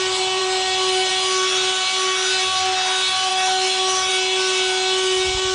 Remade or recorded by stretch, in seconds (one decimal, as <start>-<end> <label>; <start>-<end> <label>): 0.0-3.3 recorded; 3.3-4.1 remade; 4.1-5.5 recorded